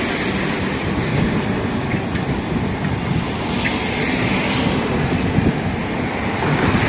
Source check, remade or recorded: recorded